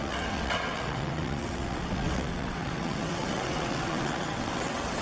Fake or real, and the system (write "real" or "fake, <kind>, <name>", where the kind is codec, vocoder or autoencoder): fake, vocoder, WaveNeXt